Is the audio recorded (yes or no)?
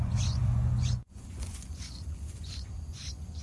no